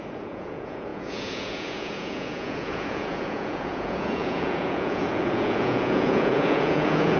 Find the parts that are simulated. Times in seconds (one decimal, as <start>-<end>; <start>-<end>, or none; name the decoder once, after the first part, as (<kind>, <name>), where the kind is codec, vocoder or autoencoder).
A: 0.0-7.2 (vocoder, Vocos)